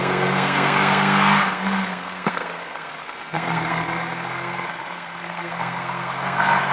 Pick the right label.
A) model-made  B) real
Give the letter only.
A